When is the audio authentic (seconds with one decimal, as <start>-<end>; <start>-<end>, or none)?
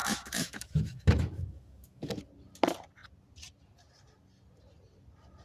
2.2-5.4